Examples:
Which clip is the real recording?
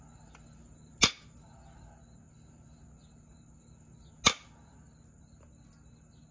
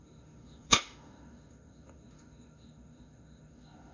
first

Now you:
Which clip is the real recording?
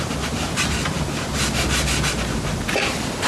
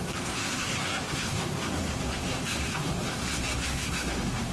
first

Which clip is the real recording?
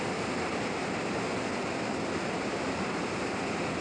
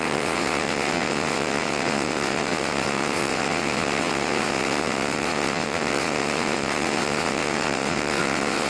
first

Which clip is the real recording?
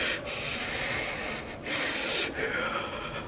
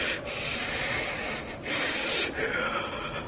first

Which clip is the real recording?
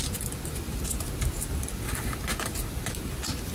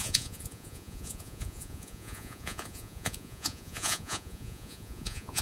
first